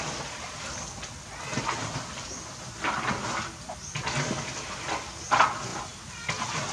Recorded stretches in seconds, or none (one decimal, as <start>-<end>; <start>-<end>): 0.0-6.7